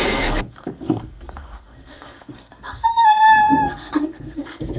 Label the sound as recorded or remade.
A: remade